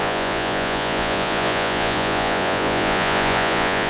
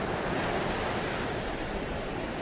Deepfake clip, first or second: first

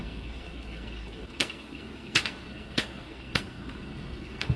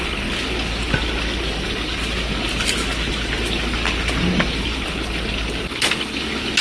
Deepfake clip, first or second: first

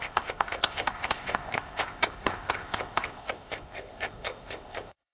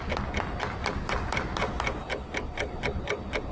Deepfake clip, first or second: first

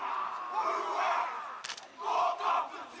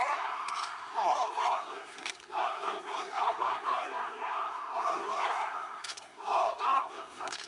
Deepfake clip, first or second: second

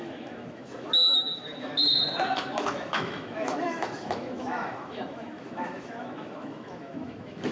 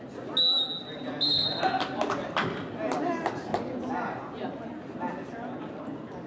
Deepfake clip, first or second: first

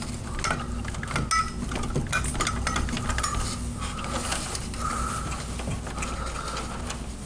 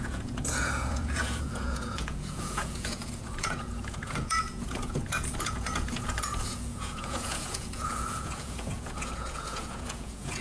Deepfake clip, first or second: second